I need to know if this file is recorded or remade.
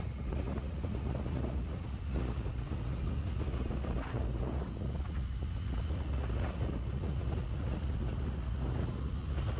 remade